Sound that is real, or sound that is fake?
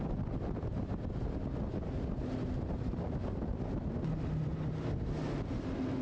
real